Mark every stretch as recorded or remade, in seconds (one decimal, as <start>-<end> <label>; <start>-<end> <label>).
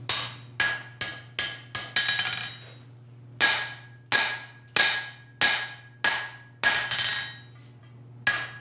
0.0-8.6 recorded